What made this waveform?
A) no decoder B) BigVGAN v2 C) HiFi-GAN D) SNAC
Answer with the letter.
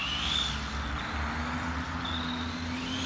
A